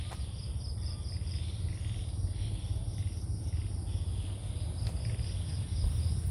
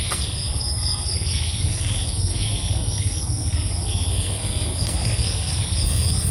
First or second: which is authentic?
first